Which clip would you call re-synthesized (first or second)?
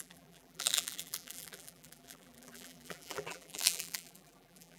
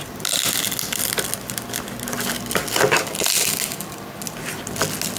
first